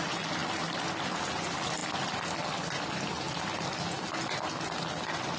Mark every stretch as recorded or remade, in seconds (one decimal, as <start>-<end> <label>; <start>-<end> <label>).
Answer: 0.0-5.4 recorded